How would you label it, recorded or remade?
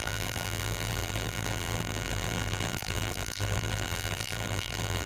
remade